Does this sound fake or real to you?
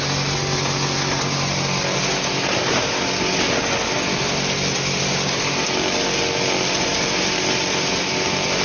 real